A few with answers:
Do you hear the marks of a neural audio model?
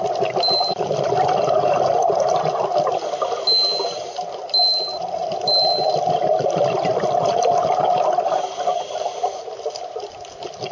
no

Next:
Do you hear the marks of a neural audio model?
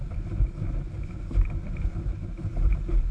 yes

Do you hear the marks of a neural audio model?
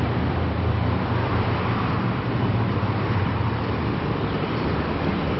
yes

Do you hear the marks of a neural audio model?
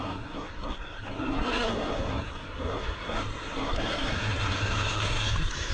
yes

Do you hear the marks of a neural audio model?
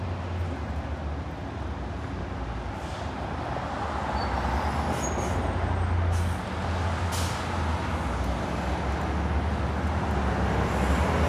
no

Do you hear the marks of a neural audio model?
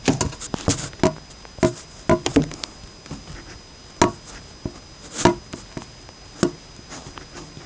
no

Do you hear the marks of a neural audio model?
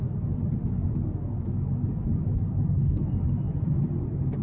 no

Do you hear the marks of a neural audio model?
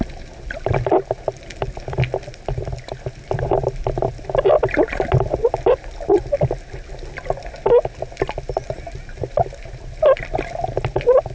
no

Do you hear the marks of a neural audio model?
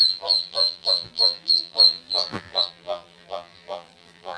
yes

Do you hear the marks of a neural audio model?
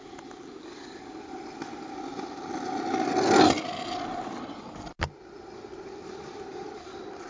no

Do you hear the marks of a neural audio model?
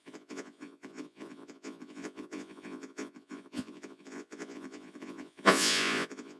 yes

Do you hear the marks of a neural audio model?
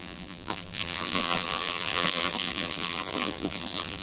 yes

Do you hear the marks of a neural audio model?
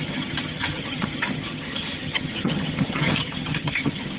yes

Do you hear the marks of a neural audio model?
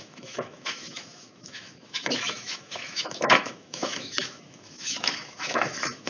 yes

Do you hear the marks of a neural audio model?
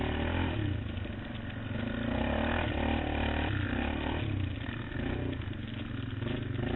no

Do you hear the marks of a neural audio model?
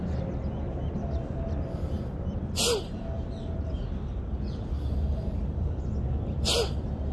no